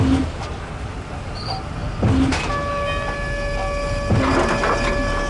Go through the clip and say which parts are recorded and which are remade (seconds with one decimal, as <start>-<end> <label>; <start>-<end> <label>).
0.0-5.3 recorded